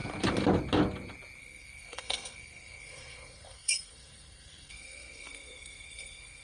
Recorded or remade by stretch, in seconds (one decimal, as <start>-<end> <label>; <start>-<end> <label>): 0.0-1.4 recorded; 1.4-6.4 remade